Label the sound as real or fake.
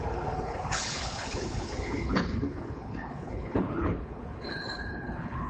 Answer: fake